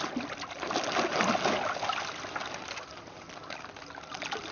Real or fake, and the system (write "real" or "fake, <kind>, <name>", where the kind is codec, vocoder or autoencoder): real